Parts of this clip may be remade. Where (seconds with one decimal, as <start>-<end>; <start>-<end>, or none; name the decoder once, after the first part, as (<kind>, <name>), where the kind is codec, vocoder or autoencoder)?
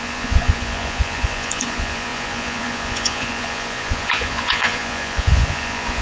0.0-6.0 (vocoder, Vocos)